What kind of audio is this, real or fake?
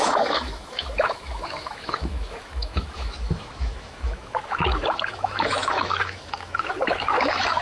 fake